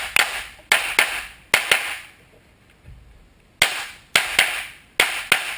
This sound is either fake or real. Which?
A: real